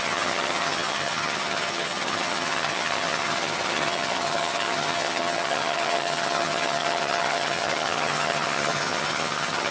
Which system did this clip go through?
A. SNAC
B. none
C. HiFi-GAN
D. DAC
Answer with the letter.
C